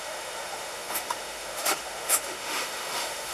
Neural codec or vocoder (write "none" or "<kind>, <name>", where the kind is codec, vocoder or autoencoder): autoencoder, DAC-VAE